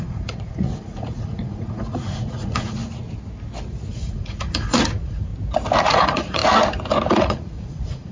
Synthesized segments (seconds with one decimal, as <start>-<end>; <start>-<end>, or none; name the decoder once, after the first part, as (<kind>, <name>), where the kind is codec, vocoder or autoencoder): 0.0-2.8 (vocoder, Vocos); 3.9-5.3; 5.8-6.4; 7.1-8.1